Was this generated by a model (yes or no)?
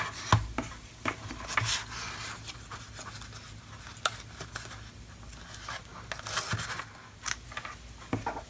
no